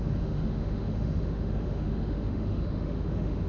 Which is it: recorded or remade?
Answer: remade